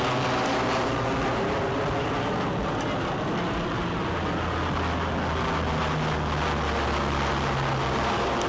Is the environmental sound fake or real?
real